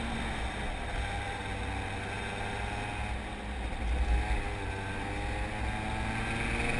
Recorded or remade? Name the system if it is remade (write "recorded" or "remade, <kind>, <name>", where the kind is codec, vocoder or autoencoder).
recorded